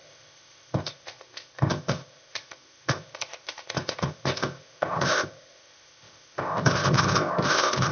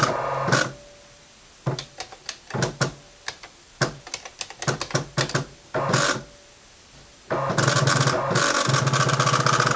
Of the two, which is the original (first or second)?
second